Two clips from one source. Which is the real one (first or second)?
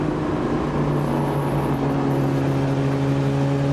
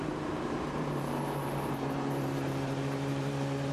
first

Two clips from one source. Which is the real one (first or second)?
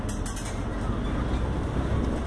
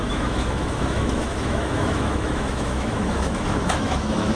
first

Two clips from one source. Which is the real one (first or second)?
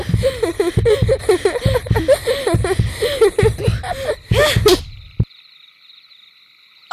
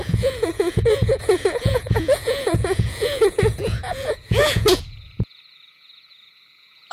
first